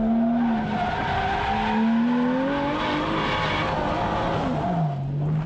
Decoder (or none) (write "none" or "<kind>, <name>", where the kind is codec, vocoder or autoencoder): none